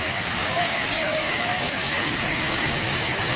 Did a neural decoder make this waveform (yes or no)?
yes